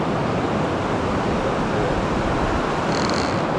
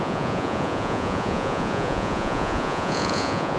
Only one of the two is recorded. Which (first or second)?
first